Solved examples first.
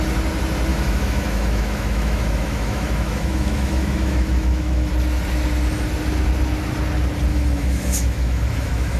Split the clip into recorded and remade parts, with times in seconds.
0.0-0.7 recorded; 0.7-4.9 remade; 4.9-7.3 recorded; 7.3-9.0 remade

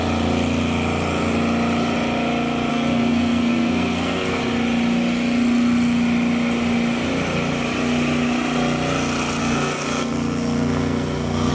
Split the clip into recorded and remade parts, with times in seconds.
0.0-2.7 recorded; 2.7-4.4 remade; 4.4-9.4 recorded; 9.4-11.5 remade

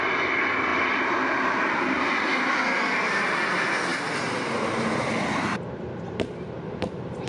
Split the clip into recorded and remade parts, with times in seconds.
0.0-7.3 recorded

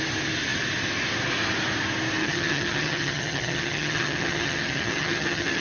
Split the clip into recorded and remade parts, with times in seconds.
0.0-2.2 recorded; 2.2-5.6 remade

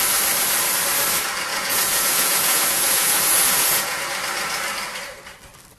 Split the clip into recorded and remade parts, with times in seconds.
0.0-1.5 recorded; 1.5-4.0 remade; 4.0-5.8 recorded